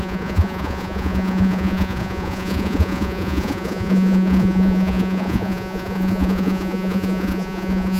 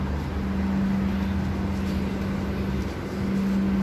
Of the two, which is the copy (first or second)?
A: first